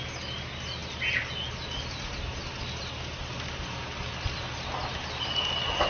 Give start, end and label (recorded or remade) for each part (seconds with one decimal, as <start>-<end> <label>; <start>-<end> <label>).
0.0-5.9 recorded

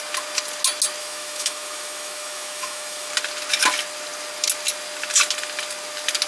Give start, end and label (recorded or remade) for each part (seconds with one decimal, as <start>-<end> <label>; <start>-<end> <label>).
0.0-1.0 recorded; 1.0-3.1 remade; 3.1-6.3 recorded

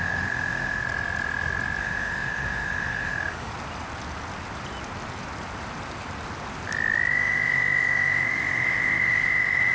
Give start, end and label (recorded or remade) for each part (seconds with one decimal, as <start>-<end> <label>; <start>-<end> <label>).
0.0-0.8 remade; 0.8-1.8 recorded; 1.8-3.5 remade; 3.5-7.1 recorded; 7.1-9.7 remade

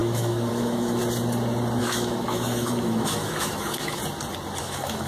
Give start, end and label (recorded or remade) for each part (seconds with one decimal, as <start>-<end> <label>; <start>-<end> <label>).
0.0-1.0 remade; 1.0-1.8 recorded; 1.8-4.0 remade; 4.0-4.6 recorded; 4.6-5.1 remade

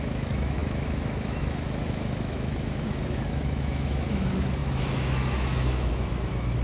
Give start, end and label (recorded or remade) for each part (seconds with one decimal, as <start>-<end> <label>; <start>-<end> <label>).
0.0-6.6 remade

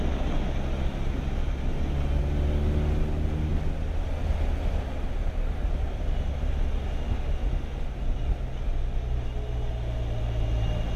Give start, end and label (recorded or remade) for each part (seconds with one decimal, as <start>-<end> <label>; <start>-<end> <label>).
0.0-11.0 recorded

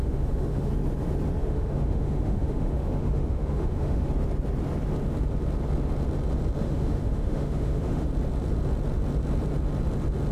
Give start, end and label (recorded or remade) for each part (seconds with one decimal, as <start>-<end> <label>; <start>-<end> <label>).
0.0-0.7 remade; 0.7-1.4 recorded; 1.4-4.1 remade; 4.1-6.6 recorded; 6.6-8.1 remade; 8.1-10.3 recorded

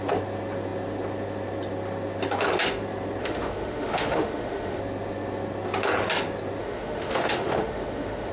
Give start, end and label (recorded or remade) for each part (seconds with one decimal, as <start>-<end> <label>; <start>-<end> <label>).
0.0-3.2 recorded; 3.2-4.8 remade; 4.8-6.6 recorded; 6.6-8.3 remade